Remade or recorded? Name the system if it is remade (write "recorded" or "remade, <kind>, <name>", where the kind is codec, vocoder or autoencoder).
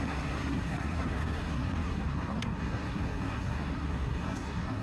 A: remade, codec, SNAC